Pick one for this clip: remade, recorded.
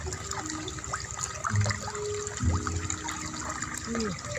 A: recorded